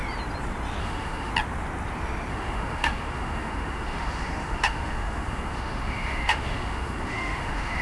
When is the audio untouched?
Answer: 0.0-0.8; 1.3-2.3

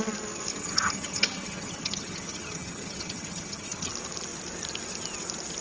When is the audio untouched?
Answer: 0.0-0.5; 3.9-5.6

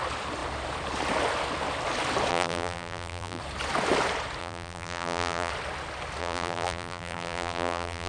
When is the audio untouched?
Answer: 0.0-2.3; 3.4-4.4; 5.5-6.2

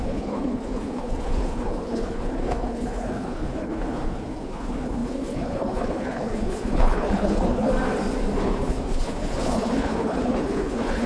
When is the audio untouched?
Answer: 7.7-8.4

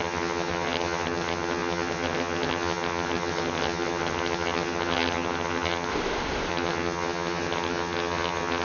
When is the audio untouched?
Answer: 5.9-6.5

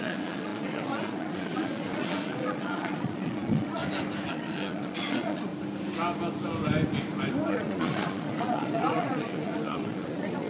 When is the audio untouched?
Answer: 3.8-4.3; 5.5-7.5